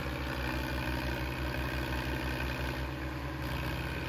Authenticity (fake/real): real